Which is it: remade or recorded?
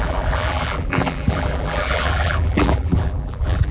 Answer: remade